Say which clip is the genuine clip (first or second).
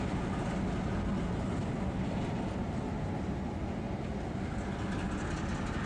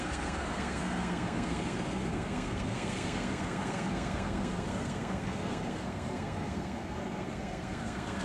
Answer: first